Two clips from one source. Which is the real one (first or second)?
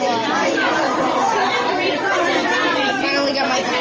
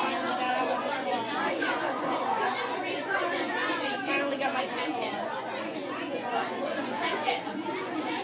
first